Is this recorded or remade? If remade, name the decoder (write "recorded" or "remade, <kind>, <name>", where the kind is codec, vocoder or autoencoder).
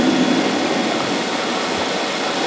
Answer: recorded